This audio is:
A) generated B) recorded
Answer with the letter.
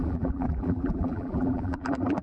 A